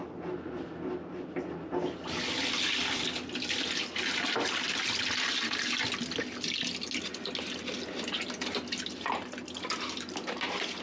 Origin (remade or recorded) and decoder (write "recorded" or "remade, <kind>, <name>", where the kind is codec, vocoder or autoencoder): recorded